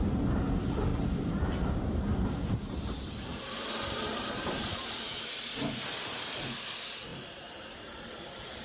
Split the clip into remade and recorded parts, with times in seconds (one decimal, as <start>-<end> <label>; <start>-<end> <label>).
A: 0.0-0.9 recorded; 0.9-5.3 remade; 5.3-7.1 recorded; 7.1-8.1 remade; 8.1-8.6 recorded